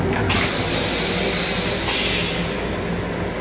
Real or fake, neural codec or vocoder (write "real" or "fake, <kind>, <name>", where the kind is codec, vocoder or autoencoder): real